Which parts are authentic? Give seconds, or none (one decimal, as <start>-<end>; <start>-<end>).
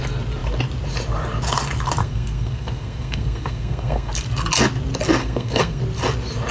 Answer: 0.0-2.0; 4.1-5.2; 5.8-6.5